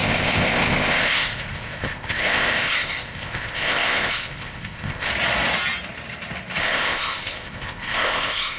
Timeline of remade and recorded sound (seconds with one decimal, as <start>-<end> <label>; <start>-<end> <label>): 0.0-5.1 remade; 5.1-6.6 recorded; 6.6-8.6 remade